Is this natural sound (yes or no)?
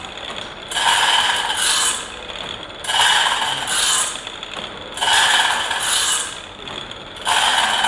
yes